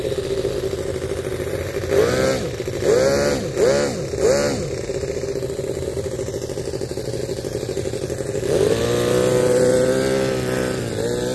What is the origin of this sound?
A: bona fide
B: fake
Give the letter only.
A